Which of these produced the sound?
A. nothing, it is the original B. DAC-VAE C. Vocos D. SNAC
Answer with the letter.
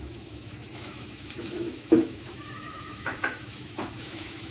B